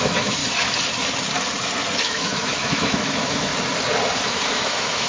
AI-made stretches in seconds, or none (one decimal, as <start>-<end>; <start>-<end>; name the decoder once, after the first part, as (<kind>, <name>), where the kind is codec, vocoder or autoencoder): 0.0-0.4 (autoencoder, DAC-VAE); 2.0-3.5; 4.3-5.1